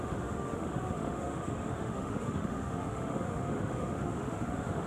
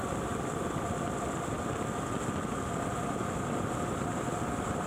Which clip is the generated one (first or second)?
first